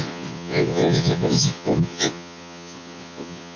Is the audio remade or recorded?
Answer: remade